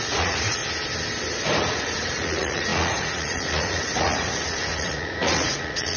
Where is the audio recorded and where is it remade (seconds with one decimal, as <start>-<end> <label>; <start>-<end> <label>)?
0.0-0.6 remade; 0.6-1.6 recorded; 1.6-6.0 remade